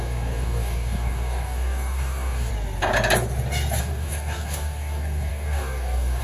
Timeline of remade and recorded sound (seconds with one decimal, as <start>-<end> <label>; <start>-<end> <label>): 0.0-2.5 remade; 2.5-3.8 recorded; 3.8-6.2 remade